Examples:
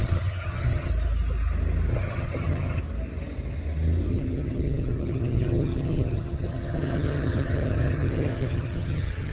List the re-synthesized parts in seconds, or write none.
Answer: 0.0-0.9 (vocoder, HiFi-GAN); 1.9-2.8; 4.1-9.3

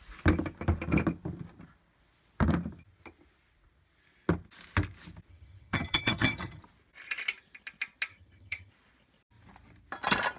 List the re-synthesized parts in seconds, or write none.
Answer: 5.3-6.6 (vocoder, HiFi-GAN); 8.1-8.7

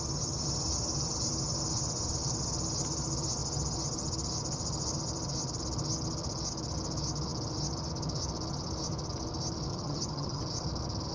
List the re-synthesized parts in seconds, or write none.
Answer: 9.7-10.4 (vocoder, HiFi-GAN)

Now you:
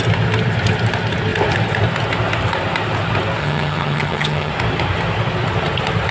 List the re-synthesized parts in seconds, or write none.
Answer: 3.4-4.5 (vocoder, HiFi-GAN)

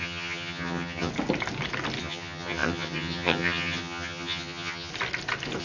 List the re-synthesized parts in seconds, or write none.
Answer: 0.0-1.1 (vocoder, HiFi-GAN); 2.0-4.9